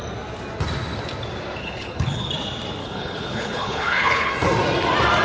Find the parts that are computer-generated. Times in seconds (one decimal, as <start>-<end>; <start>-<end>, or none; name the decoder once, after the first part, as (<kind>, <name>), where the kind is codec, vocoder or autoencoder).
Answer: 1.6-2.3 (codec, HILCodec); 2.8-4.3

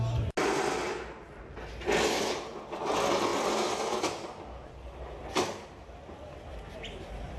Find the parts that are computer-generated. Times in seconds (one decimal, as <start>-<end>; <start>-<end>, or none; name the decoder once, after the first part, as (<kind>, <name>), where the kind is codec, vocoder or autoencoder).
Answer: none

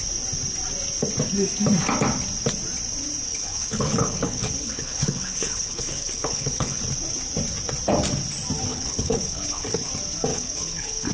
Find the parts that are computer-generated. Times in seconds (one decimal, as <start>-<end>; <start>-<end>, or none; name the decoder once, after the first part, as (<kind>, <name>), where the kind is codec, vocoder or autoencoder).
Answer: 3.3-6.8 (codec, HILCodec); 8.7-9.9; 10.3-11.1

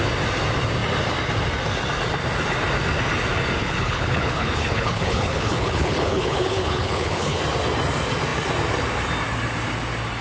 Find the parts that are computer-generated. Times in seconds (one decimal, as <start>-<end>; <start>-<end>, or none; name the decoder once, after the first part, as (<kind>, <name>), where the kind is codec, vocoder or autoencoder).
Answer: 3.6-7.4 (codec, HILCodec)

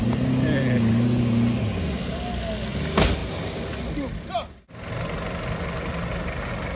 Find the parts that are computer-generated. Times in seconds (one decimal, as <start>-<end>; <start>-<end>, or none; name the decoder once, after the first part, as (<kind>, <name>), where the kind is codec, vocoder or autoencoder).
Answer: none

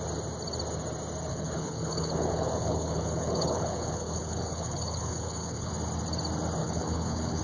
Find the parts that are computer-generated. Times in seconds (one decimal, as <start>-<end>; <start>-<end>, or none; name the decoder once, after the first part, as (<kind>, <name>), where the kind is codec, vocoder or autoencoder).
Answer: 1.3-5.7 (codec, HILCodec); 6.6-7.4

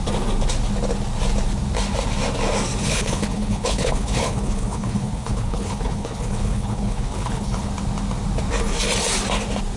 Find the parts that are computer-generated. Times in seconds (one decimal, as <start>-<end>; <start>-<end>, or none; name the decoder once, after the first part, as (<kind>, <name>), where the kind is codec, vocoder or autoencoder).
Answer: 2.8-7.7 (codec, HILCodec)